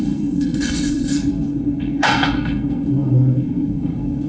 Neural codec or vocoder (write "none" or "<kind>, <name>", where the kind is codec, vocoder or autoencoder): codec, SNAC